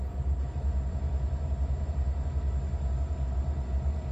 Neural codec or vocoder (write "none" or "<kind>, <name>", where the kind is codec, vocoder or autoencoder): none